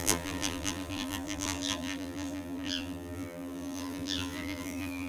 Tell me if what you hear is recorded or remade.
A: remade